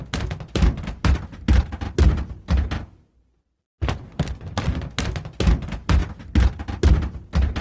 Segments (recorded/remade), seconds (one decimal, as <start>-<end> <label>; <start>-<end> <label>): 0.0-7.6 recorded